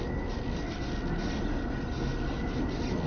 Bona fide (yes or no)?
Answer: yes